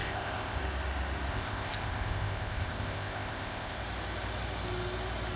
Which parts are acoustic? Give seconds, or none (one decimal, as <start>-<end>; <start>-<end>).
0.6-1.3; 3.8-5.4